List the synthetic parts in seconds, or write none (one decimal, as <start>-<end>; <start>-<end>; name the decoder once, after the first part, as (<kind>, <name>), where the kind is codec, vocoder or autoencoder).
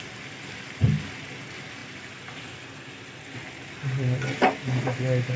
none